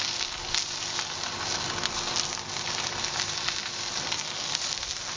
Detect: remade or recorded recorded